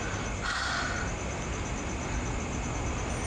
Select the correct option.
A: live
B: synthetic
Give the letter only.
A